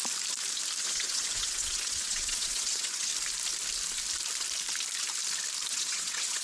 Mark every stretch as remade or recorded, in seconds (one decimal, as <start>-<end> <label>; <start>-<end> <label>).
0.0-0.8 recorded; 0.8-3.1 remade; 3.1-5.7 recorded; 5.7-6.4 remade